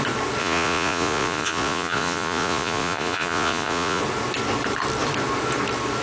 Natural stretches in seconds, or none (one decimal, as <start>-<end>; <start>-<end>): 0.0-0.4; 4.0-6.0